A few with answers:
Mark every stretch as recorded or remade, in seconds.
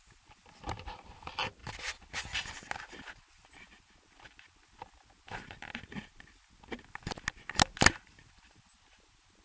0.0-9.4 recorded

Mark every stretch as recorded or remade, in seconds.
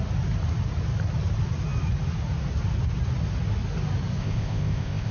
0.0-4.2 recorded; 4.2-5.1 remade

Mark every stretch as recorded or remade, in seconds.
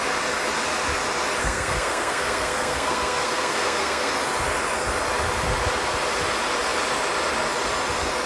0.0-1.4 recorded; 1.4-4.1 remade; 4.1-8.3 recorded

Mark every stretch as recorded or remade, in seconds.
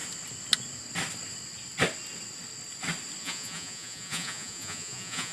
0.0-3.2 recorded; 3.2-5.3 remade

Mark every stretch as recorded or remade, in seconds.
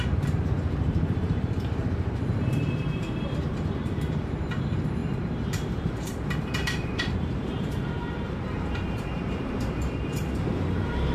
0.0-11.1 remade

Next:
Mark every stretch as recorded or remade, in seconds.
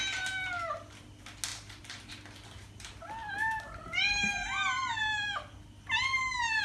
0.0-1.5 recorded; 1.5-2.1 remade; 2.1-6.6 recorded